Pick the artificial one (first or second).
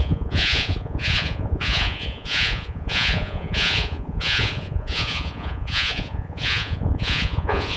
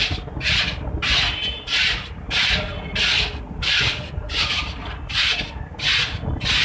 first